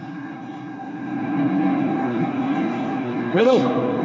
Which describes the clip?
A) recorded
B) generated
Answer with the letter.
B